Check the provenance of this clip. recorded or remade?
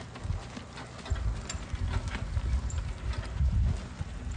recorded